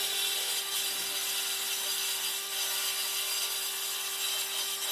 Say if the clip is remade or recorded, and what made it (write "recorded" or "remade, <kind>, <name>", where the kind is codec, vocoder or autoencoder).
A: recorded